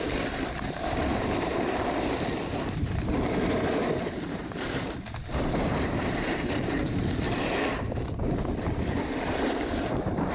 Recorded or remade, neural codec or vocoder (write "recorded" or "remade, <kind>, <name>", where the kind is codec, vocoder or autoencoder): remade, vocoder, BigVGAN v2